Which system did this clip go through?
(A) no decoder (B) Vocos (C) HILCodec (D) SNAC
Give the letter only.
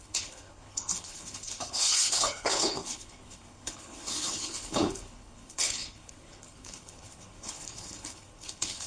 C